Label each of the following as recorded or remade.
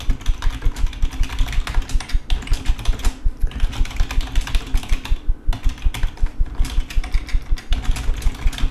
recorded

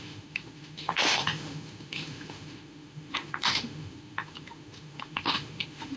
remade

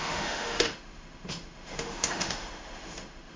remade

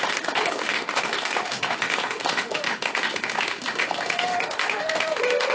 remade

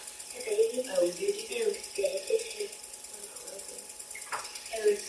recorded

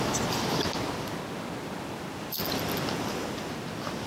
recorded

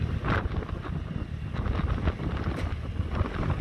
recorded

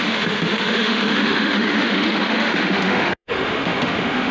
remade